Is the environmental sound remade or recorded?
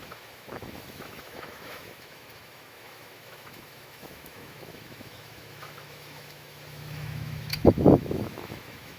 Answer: remade